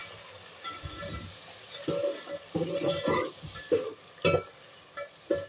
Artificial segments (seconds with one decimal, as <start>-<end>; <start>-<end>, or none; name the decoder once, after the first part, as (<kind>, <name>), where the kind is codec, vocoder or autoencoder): none